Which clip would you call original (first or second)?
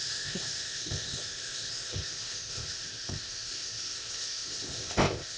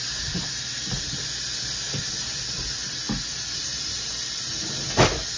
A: second